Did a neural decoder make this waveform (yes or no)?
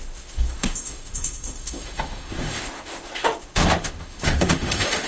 yes